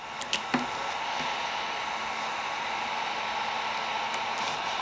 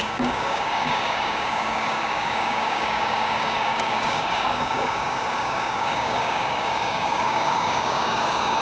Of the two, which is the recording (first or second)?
first